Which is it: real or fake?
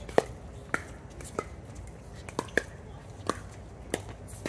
real